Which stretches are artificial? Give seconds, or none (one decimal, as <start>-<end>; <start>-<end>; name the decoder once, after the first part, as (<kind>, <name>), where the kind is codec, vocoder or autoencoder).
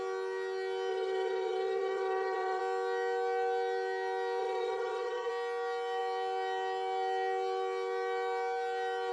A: 0.9-2.6 (vocoder, WaveNeXt); 4.4-5.3